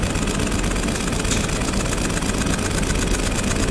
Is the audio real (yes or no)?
yes